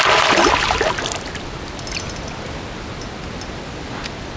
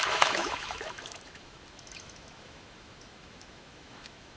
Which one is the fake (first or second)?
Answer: second